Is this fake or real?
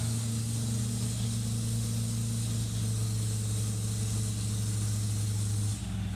real